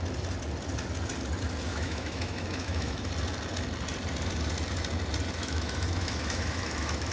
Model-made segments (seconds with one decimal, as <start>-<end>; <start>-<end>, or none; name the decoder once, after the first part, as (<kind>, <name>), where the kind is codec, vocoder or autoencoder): 1.7-3.1 (autoencoder, DAC-VAE); 5.4-7.1